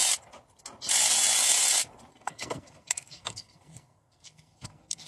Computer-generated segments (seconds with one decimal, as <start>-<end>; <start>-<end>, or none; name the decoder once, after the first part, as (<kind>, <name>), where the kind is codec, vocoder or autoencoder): 2.1-5.1 (codec, SNAC)